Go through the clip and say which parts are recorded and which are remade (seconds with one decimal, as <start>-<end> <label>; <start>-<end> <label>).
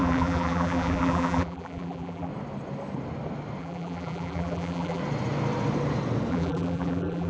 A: 0.0-2.3 remade; 2.3-3.6 recorded; 3.6-5.0 remade; 5.0-6.3 recorded; 6.3-7.3 remade